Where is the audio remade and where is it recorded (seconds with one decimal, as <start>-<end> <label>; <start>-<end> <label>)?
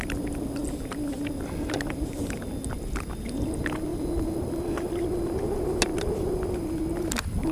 0.0-3.9 recorded; 3.9-4.9 remade; 4.9-5.9 recorded; 5.9-6.7 remade; 6.7-7.5 recorded